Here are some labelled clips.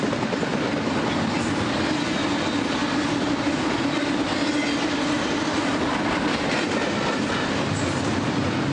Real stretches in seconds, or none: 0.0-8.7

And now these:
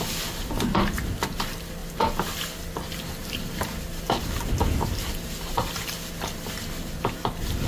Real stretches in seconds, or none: 0.0-7.7

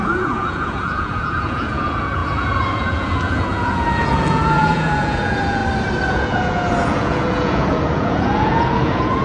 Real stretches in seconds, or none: 5.6-6.1

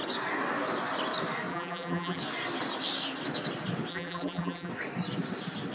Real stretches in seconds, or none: 0.0-1.5; 2.2-3.9; 4.7-5.7

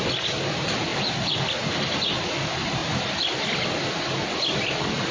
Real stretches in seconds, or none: 0.0-5.1

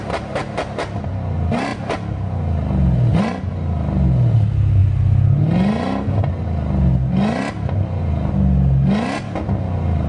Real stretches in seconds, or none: 0.0-10.1

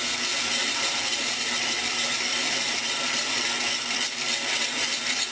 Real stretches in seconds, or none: 0.0-0.6; 1.4-2.3; 3.3-5.3

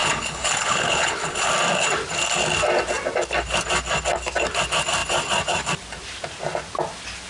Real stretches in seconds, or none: 1.5-7.3